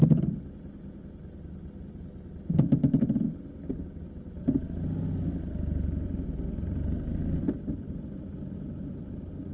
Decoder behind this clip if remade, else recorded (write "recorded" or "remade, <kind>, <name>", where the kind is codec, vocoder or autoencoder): recorded